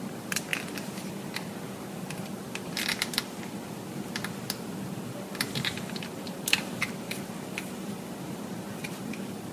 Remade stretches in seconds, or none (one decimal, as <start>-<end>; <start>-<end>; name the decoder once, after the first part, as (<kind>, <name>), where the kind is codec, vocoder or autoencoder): 0.0-9.5 (vocoder, BigVGAN v2)